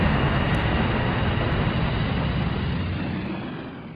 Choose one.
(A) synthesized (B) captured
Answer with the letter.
B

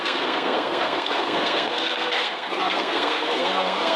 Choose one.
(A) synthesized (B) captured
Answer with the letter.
A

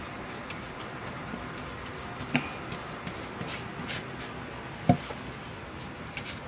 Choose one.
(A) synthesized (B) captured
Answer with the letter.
B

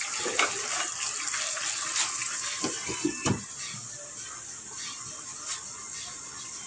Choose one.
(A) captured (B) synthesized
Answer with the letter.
A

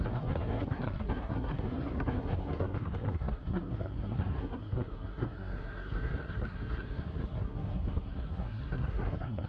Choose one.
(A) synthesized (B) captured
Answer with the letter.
A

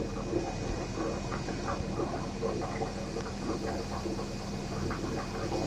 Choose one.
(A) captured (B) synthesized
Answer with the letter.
A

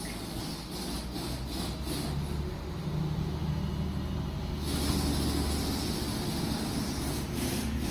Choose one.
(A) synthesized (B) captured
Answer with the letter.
B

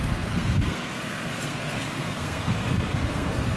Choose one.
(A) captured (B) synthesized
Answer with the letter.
B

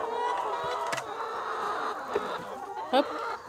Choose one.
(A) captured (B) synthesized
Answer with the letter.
A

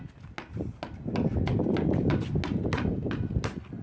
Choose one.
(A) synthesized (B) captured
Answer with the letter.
B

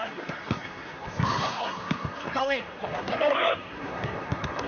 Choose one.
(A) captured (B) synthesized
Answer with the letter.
B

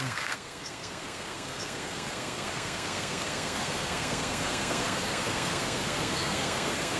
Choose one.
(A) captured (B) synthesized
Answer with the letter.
B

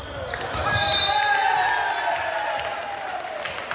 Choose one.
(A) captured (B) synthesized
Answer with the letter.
A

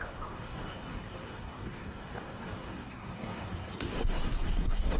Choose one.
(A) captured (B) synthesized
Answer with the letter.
B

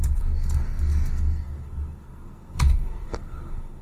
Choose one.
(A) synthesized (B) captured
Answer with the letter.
A